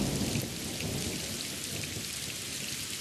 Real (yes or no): yes